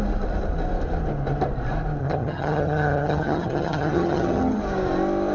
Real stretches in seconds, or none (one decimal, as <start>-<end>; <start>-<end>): 0.0-2.0; 4.6-5.3